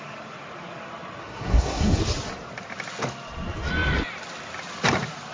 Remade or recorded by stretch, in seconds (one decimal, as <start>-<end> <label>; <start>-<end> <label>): 0.0-1.2 recorded; 1.2-2.0 remade; 2.0-5.3 recorded